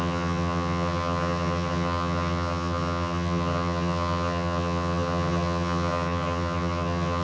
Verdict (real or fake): fake